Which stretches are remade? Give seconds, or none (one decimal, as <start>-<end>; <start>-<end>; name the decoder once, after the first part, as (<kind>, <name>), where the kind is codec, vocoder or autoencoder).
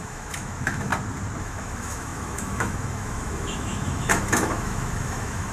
0.0-0.9 (autoencoder, DAC-VAE); 1.4-5.5